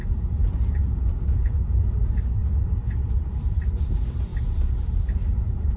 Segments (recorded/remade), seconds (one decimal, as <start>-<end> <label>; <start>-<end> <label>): 0.0-2.4 remade; 2.4-3.1 recorded; 3.1-5.8 remade